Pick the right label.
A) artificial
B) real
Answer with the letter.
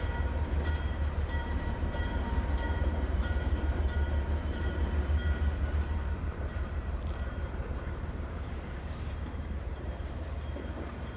A